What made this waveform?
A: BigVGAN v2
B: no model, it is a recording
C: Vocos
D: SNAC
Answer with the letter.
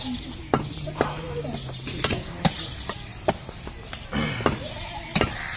B